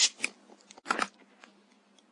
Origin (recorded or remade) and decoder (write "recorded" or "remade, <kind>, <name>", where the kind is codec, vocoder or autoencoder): recorded